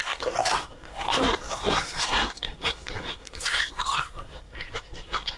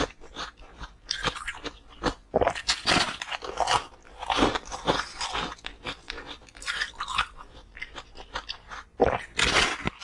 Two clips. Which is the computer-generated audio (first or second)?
first